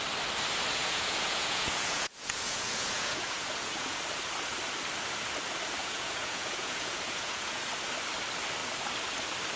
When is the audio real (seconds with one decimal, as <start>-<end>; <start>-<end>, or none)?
0.0-0.8; 4.0-5.8; 7.6-9.6